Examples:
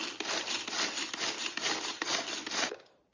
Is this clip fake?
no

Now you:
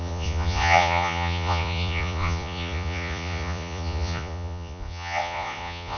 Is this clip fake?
yes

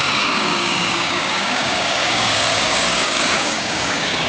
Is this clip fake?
yes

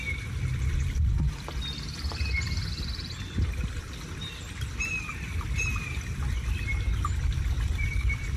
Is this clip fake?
yes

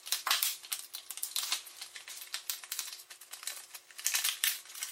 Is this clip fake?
no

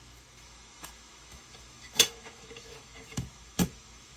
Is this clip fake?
yes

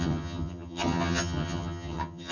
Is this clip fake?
yes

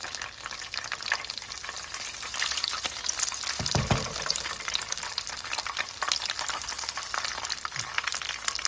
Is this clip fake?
no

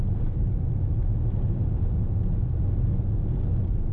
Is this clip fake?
no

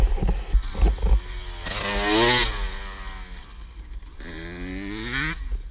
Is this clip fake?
no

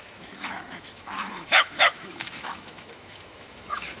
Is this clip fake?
yes